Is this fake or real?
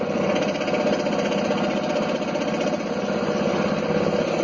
real